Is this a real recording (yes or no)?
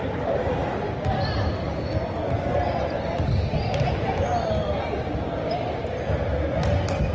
yes